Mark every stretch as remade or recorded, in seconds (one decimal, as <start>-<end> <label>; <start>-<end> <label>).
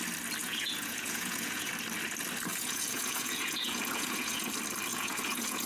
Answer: 0.0-0.4 recorded; 0.4-1.7 remade; 1.7-2.5 recorded; 2.5-4.5 remade; 4.5-4.9 recorded; 4.9-5.7 remade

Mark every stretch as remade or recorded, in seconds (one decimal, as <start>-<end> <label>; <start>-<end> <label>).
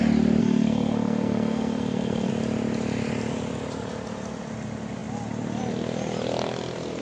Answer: 0.0-0.4 recorded; 0.4-2.3 remade; 2.3-7.0 recorded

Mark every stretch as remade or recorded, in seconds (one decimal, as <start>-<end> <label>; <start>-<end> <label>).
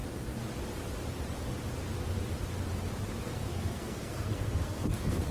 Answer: 0.0-3.2 recorded; 3.2-5.3 remade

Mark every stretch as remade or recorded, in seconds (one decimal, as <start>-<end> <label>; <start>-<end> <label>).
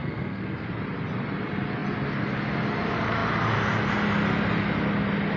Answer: 0.0-0.7 remade; 0.7-5.4 recorded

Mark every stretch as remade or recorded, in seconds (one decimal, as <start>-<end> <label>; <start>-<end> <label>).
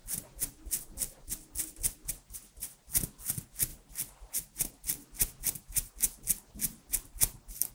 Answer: 0.0-7.7 recorded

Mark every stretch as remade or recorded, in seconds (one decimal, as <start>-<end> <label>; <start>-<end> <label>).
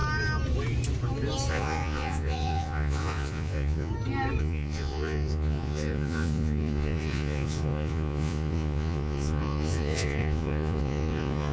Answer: 0.0-1.5 recorded; 1.5-3.9 remade; 3.9-4.4 recorded; 4.4-11.5 remade